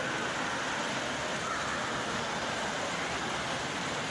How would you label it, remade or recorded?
recorded